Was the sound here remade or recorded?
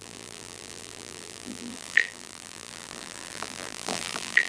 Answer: remade